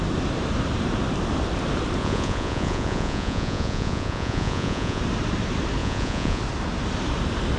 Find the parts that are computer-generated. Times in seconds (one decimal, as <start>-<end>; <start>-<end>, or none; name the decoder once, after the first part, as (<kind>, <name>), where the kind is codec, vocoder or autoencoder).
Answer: 2.0-5.0 (vocoder, Vocos); 5.8-6.4